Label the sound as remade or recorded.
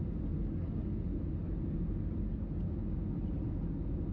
recorded